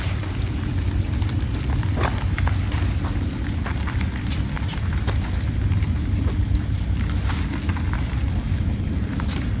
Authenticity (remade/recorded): recorded